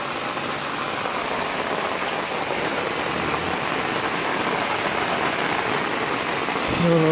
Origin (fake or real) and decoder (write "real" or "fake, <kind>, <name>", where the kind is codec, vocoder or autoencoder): real